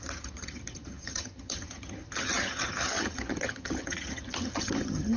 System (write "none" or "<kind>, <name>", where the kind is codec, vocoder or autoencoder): vocoder, HiFi-GAN